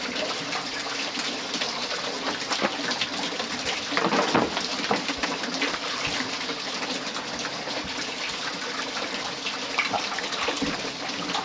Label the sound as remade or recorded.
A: recorded